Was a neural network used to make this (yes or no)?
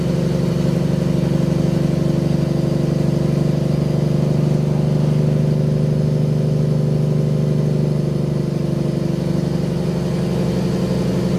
no